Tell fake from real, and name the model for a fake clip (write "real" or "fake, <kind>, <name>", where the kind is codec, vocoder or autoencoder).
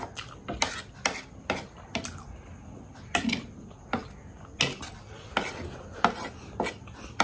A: real